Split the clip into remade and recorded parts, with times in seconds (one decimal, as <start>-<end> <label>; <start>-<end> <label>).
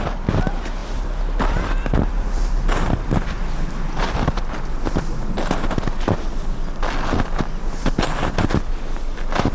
0.0-0.8 recorded; 0.8-4.4 remade; 4.4-9.5 recorded